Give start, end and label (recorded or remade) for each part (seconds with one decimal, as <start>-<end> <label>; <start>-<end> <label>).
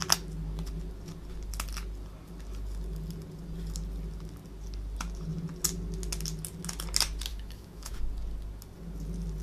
0.0-7.3 recorded; 7.3-7.9 remade; 7.9-9.4 recorded